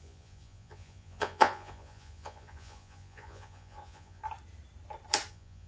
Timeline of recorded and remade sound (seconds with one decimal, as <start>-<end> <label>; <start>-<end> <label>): 0.0-4.2 remade; 4.2-5.3 recorded; 5.3-5.7 remade